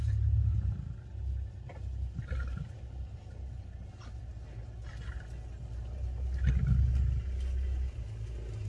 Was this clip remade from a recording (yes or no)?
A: no